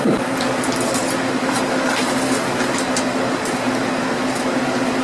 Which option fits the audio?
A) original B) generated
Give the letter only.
A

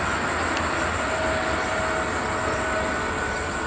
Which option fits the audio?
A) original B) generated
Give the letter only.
A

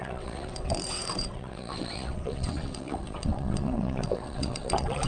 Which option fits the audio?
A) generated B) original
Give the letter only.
A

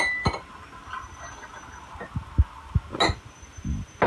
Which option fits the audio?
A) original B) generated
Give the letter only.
A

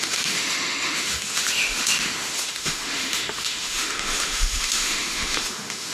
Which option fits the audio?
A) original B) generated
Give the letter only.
B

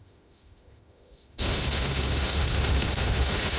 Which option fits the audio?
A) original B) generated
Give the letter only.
B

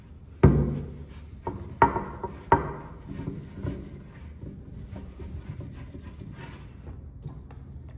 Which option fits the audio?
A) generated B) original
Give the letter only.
B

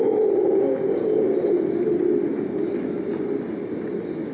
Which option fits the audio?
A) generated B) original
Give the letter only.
B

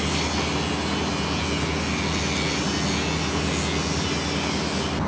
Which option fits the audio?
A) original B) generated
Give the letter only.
A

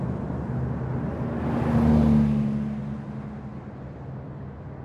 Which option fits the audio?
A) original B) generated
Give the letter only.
A